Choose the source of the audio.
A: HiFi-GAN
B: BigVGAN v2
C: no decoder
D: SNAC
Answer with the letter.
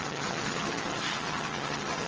A